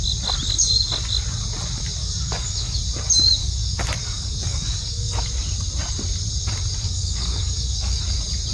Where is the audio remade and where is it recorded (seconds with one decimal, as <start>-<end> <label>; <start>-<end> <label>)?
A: 0.0-2.0 recorded; 2.0-2.8 remade; 2.8-3.4 recorded; 3.4-5.2 remade; 5.2-6.8 recorded; 6.8-8.0 remade; 8.0-8.5 recorded